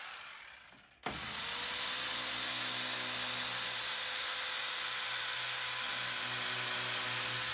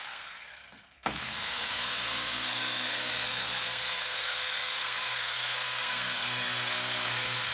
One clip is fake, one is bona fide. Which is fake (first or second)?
second